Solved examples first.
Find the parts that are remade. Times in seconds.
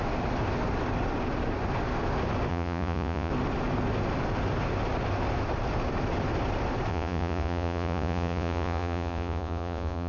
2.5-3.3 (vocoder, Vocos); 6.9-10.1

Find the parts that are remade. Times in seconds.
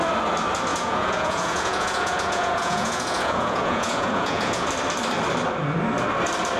0.7-4.7 (vocoder, Vocos)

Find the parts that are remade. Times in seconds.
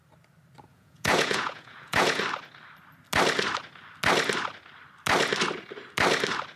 0.7-2.2 (vocoder, Vocos)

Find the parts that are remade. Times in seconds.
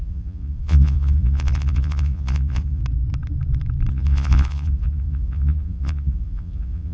0.0-2.8 (vocoder, Vocos); 3.9-6.9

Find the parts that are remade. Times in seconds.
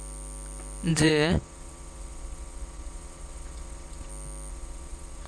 0.9-4.1 (vocoder, Vocos); 4.5-5.3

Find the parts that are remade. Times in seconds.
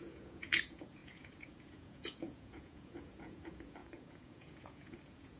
0.0-5.4 (vocoder, Vocos)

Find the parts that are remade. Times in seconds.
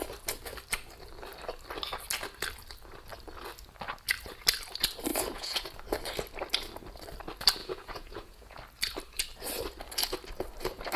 5.1-5.7 (vocoder, Vocos); 7.6-8.6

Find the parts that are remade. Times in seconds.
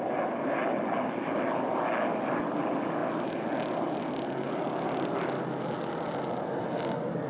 none